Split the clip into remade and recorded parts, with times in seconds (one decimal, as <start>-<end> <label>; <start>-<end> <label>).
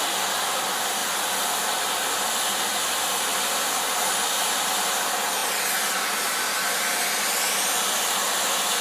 0.0-1.0 recorded; 1.0-2.3 remade; 2.3-3.3 recorded; 3.3-3.9 remade; 3.9-8.8 recorded